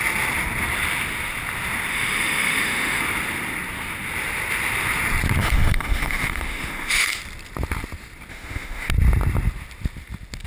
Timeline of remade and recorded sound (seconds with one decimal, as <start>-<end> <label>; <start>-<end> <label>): 0.0-1.9 recorded; 1.9-3.0 remade; 3.0-5.4 recorded; 5.4-7.2 remade; 7.2-8.3 recorded; 8.3-8.9 remade; 8.9-10.5 recorded